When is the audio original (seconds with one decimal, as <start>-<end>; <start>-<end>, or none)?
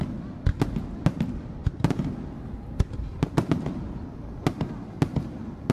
0.0-5.7